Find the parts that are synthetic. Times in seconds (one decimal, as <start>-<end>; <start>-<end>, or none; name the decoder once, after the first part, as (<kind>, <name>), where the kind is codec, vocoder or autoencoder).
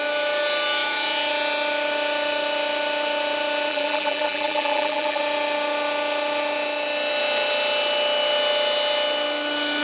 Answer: 3.7-5.2 (vocoder, BigVGAN v2)